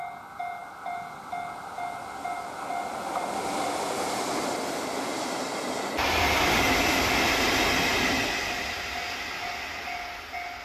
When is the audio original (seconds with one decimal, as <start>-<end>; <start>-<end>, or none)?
0.0-10.6

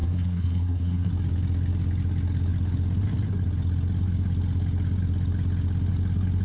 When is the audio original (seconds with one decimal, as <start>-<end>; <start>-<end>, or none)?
1.1-6.4

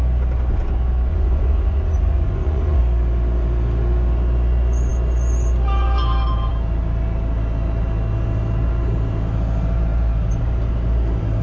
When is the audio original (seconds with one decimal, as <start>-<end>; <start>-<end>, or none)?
0.0-1.1; 2.8-11.4